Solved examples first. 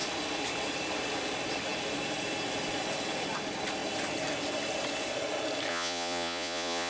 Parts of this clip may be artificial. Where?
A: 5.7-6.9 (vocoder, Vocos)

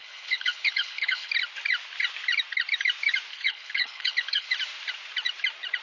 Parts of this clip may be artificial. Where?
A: 0.0-1.3 (codec, HILCodec); 3.3-4.5

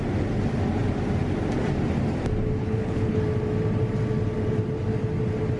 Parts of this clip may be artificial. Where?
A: 2.6-3.2 (codec, HILCodec)

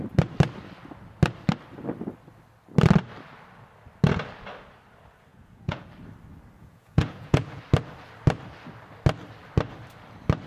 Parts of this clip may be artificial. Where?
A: 5.3-5.9 (vocoder, Vocos); 6.6-7.6

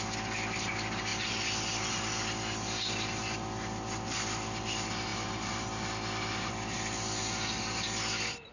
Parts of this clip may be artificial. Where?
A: 0.0-8.5 (vocoder, BigVGAN v2)